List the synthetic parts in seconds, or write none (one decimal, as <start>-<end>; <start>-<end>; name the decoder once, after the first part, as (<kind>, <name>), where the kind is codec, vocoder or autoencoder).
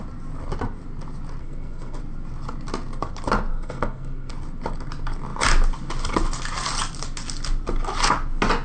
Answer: 1.4-2.0 (codec, SNAC); 3.5-4.3